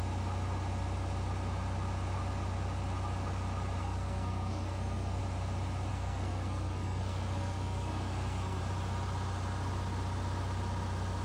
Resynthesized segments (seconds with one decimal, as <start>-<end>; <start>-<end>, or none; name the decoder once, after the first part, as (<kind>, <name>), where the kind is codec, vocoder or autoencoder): 3.8-5.2 (codec, SNAC); 5.9-8.6